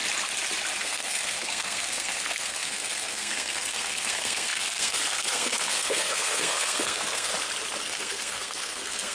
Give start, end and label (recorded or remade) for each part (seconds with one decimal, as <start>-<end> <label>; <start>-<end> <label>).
0.0-0.8 recorded; 0.8-7.3 remade; 7.3-7.8 recorded; 7.8-9.1 remade